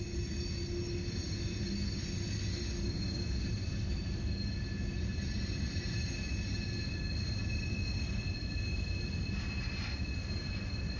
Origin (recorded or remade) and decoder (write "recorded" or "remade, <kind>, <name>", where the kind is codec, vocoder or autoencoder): recorded